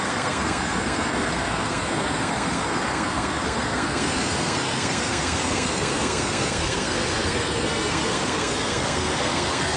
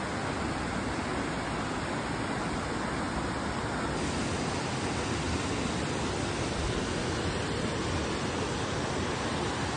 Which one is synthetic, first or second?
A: first